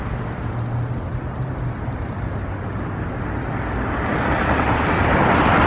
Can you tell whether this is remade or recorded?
recorded